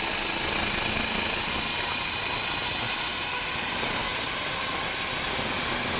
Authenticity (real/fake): real